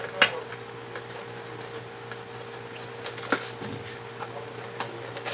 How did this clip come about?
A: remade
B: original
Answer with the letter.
B